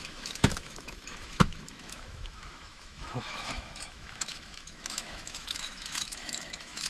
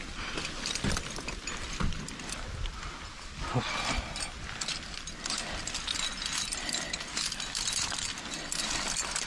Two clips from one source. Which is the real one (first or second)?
second